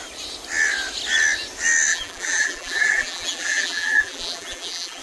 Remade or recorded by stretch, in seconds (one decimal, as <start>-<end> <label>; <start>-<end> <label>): 0.0-1.9 recorded; 1.9-5.0 remade